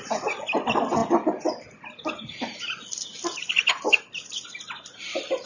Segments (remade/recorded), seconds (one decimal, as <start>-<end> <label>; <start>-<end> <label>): 0.0-5.5 recorded